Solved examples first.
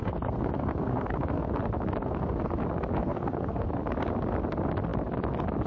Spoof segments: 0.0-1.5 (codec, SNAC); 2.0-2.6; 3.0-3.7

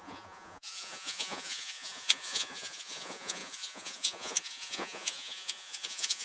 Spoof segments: 0.0-6.2 (vocoder, Vocos)

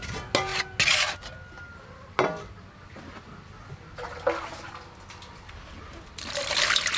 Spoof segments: none

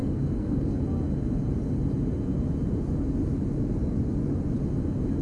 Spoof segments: 0.0-0.8 (codec, SNAC)

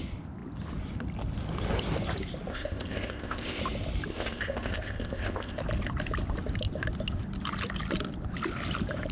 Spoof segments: 2.5-3.6 (codec, ZipCodec); 4.1-5.6

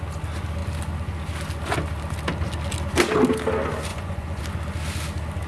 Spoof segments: 3.9-4.4 (vocoder, Vocos)

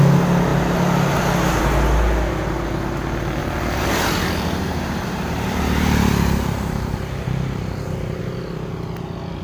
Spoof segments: 3.4-8.2 (vocoder, BigVGAN v2)